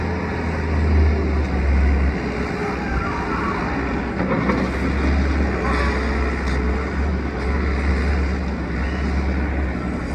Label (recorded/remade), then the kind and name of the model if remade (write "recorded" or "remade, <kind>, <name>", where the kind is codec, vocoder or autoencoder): recorded